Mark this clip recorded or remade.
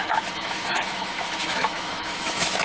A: remade